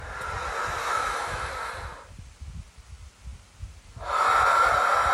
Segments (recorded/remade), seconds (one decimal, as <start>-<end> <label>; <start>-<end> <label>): 0.0-0.8 recorded; 0.8-1.5 remade; 1.5-5.1 recorded